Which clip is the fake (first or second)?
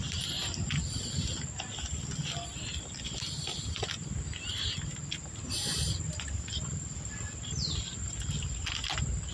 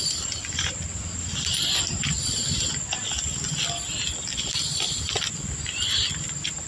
second